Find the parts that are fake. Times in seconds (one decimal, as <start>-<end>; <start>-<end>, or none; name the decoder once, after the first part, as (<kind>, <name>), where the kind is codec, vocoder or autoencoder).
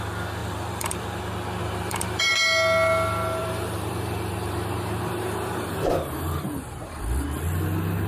0.4-1.2 (vocoder, BigVGAN v2); 1.6-2.3; 3.4-7.0